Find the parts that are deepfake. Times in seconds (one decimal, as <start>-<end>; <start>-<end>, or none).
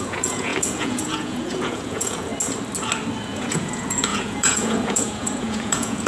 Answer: 0.0-2.3; 3.2-6.1